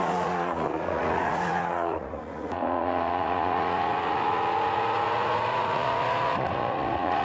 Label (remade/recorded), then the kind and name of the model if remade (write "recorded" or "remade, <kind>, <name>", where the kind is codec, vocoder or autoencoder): remade, vocoder, Vocos